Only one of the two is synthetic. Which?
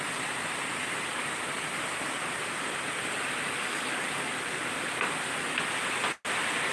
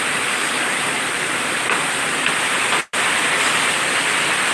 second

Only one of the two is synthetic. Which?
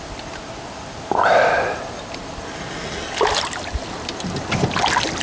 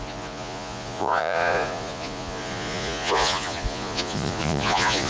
second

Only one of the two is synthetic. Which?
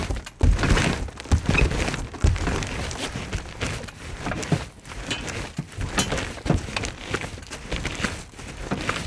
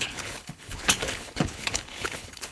second